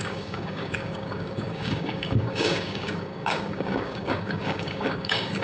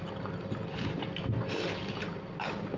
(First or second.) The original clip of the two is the second